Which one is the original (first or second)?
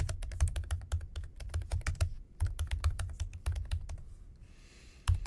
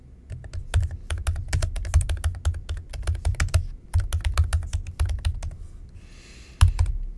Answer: second